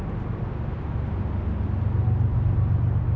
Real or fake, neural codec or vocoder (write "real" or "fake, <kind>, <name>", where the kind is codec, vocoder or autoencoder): real